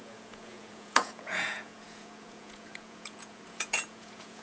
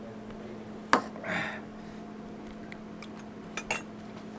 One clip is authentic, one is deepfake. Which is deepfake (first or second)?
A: first